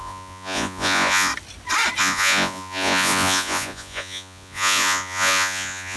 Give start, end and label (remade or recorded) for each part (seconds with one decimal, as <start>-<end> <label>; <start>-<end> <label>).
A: 0.0-1.3 remade; 1.3-2.0 recorded; 2.0-6.0 remade